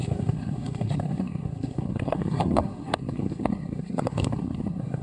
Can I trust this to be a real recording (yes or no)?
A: no